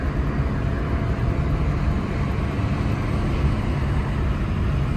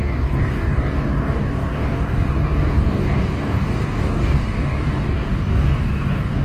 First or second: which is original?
first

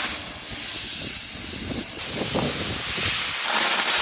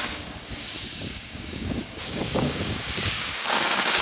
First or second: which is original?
first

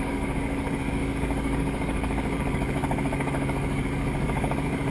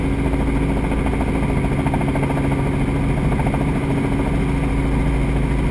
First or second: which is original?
second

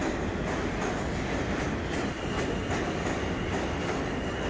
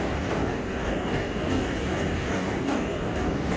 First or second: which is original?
first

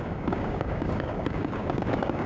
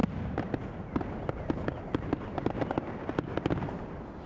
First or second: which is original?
second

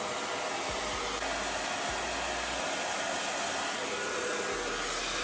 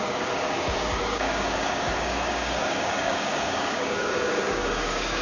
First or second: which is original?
first